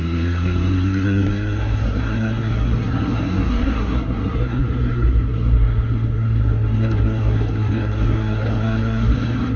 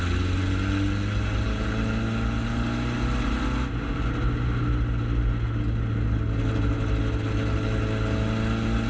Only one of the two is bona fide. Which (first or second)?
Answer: second